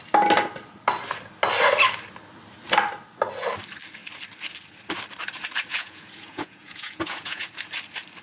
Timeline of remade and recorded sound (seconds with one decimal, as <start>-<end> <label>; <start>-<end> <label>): 0.0-5.7 recorded; 5.7-7.5 remade; 7.5-8.2 recorded